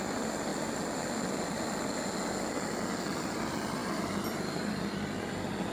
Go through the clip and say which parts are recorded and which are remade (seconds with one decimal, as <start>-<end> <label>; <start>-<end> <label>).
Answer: 0.0-5.7 recorded